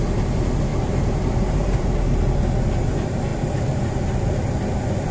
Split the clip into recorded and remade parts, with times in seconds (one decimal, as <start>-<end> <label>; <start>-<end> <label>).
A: 0.0-0.7 recorded; 0.7-1.9 remade; 1.9-5.1 recorded